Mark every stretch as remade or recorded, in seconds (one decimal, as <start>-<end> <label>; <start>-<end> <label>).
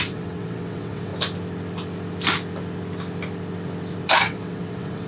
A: 0.0-1.1 remade; 1.1-4.2 recorded; 4.2-5.1 remade